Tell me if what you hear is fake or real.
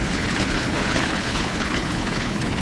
fake